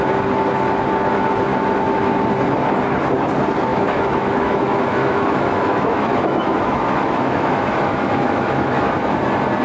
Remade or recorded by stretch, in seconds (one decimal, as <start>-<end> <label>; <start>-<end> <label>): 0.0-3.7 recorded; 3.7-8.9 remade; 8.9-9.6 recorded